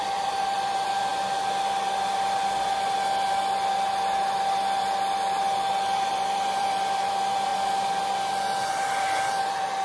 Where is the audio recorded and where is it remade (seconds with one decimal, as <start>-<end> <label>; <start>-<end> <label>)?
0.0-1.1 remade; 1.1-6.1 recorded; 6.1-7.5 remade; 7.5-8.7 recorded; 8.7-9.8 remade